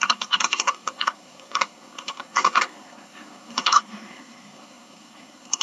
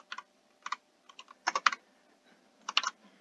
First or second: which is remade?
first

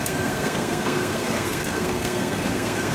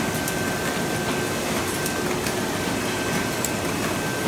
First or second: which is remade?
first